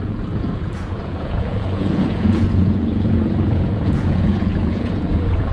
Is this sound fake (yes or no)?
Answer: yes